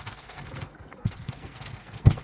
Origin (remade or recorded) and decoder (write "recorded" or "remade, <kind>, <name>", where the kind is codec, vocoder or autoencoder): remade, codec, SNAC